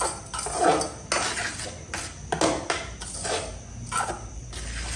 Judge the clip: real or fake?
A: real